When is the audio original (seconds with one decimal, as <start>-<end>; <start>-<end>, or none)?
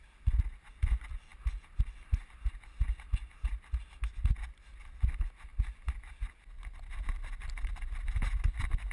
0.0-8.9